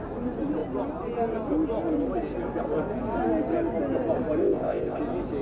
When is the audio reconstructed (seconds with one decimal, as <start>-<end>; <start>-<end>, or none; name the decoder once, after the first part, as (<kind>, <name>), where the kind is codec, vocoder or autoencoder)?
4.4-5.0 (codec, ZipCodec)